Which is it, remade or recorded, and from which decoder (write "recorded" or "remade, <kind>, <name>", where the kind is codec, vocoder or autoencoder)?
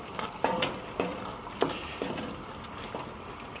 recorded